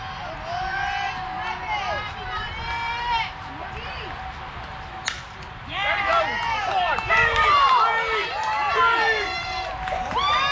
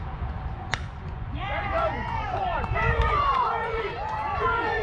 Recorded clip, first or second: first